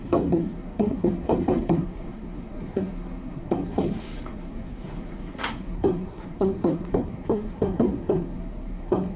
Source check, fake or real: fake